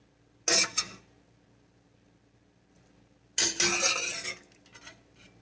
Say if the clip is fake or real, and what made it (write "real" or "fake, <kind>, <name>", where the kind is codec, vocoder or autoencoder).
real